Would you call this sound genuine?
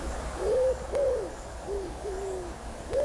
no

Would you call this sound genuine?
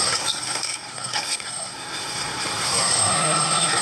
no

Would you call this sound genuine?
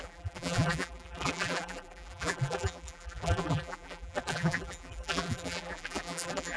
no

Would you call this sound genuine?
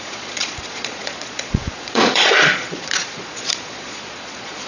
no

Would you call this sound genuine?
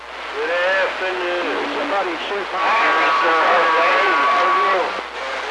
yes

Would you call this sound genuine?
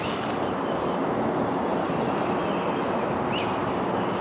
yes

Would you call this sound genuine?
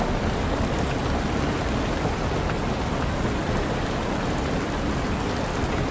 yes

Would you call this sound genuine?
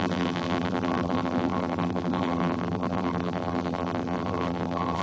no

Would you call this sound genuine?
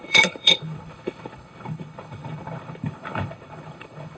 no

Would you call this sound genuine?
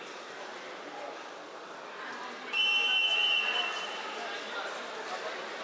no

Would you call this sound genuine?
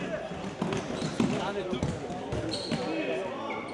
yes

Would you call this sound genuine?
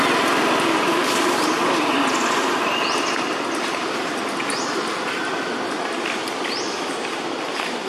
yes